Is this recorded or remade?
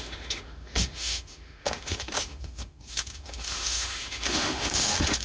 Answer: remade